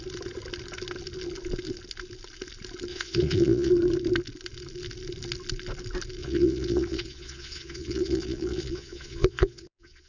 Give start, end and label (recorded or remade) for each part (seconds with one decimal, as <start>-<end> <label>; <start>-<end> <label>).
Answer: 0.0-2.9 recorded; 2.9-3.7 remade; 3.7-6.2 recorded; 6.2-10.1 remade